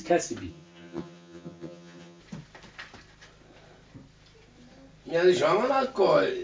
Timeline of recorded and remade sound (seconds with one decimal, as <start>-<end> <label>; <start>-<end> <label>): 0.0-0.5 recorded; 0.5-2.2 remade; 2.2-6.4 recorded